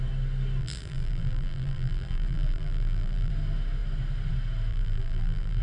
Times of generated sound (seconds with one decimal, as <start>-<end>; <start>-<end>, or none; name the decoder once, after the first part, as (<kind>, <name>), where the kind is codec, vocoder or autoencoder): 0.6-3.3 (vocoder, BigVGAN v2); 4.7-5.6